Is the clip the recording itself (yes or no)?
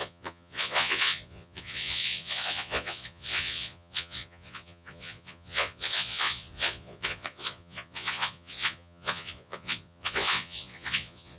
no